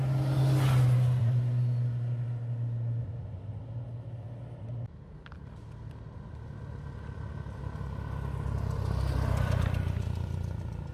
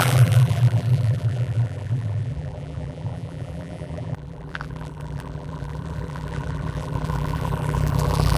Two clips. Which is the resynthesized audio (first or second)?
second